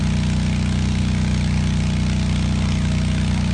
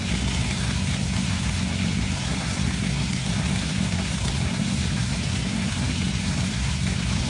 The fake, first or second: second